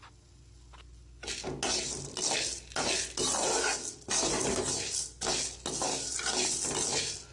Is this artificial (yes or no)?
no